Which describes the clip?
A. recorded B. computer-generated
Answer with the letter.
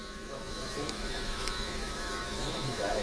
B